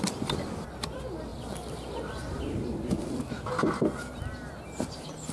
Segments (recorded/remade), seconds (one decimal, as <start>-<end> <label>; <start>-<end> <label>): 0.0-5.3 recorded